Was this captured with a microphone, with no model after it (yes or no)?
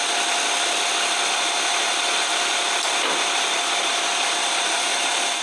yes